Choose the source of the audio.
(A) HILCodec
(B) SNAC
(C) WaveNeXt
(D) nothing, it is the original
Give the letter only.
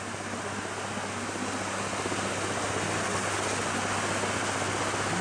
D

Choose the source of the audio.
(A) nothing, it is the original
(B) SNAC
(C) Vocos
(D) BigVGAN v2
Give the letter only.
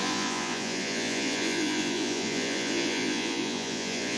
C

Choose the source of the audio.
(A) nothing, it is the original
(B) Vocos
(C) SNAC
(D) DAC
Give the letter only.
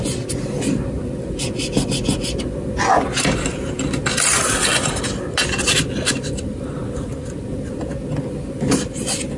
A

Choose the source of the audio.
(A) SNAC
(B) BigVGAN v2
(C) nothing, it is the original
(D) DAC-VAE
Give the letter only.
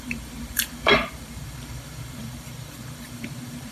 B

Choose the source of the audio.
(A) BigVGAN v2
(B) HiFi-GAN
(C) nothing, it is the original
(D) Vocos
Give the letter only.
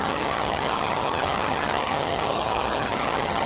B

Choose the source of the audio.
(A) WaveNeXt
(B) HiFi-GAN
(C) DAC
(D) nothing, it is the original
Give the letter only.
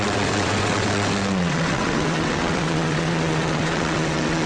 A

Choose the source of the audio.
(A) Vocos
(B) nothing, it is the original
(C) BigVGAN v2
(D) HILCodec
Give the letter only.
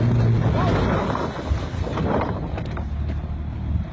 B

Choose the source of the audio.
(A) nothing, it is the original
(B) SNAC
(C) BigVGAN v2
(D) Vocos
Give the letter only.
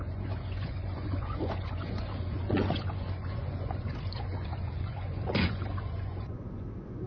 D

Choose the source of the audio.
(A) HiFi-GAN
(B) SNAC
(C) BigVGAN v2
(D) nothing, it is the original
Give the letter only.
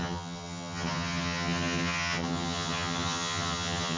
A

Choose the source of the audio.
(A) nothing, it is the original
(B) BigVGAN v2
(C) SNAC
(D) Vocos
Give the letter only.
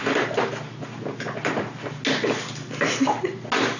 A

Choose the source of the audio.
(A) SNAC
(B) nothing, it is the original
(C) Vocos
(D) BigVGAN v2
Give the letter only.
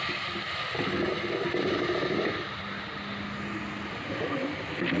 B